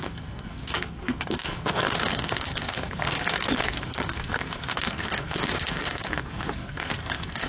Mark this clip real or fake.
fake